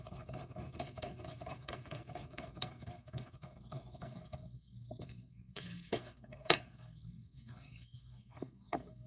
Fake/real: fake